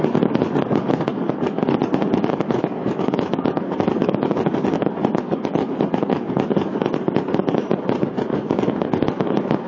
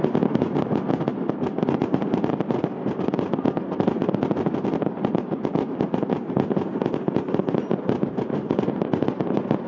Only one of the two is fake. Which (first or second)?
first